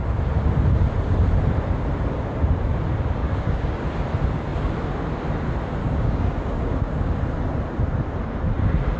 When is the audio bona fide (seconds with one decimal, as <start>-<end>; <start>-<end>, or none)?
0.0-3.2; 3.8-5.8; 7.2-9.0